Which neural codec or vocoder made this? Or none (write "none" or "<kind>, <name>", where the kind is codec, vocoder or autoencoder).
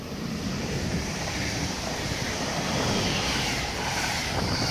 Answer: vocoder, BigVGAN v2